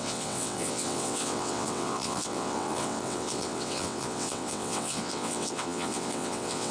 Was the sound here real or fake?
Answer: fake